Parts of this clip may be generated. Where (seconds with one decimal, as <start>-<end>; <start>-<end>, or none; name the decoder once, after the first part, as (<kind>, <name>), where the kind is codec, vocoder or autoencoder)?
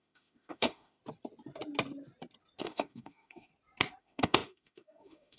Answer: 0.0-1.0 (autoencoder, DAC-VAE); 2.6-3.5; 4.0-5.4